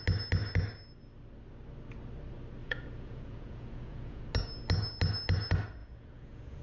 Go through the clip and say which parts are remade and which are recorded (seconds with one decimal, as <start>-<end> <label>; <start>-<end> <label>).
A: 0.0-2.6 recorded; 2.6-4.2 remade; 4.2-5.8 recorded; 5.8-6.6 remade